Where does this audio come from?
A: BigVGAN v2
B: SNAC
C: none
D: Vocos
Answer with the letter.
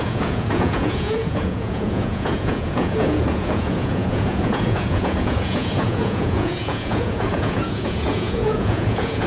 D